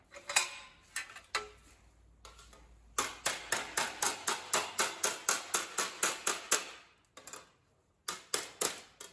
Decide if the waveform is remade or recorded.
recorded